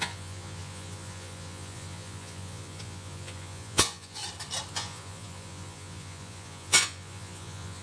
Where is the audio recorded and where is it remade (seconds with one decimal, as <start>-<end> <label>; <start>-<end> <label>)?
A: 0.0-4.2 remade; 4.2-4.7 recorded; 4.7-7.8 remade

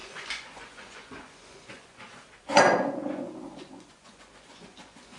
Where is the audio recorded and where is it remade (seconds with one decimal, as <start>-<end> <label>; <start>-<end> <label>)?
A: 0.0-5.2 remade

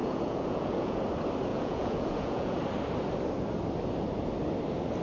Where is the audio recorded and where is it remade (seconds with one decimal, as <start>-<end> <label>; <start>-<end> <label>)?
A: 0.0-1.0 remade; 1.0-1.5 recorded; 1.5-2.6 remade; 2.6-5.0 recorded